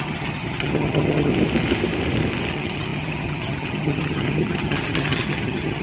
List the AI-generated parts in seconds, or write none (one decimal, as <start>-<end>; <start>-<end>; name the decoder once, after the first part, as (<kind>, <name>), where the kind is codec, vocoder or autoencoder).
0.0-1.3 (vocoder, HiFi-GAN); 2.5-5.8